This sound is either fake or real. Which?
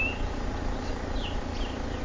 real